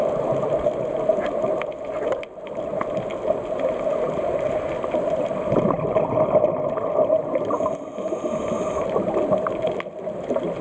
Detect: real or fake real